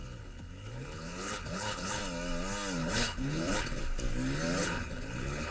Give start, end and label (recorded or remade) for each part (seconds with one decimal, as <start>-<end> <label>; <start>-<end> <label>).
0.0-2.0 remade; 2.0-2.8 recorded; 2.8-3.8 remade; 3.8-4.6 recorded; 4.6-5.5 remade